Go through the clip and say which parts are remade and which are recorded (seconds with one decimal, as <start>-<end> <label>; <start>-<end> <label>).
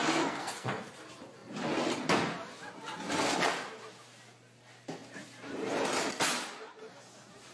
0.0-0.9 remade; 0.9-7.5 recorded